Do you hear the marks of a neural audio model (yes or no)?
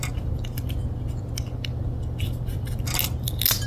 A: no